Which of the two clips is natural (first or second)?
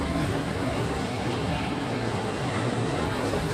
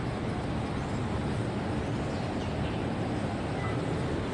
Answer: second